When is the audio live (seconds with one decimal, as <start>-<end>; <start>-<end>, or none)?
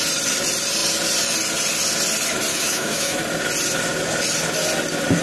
0.0-2.5; 3.2-5.2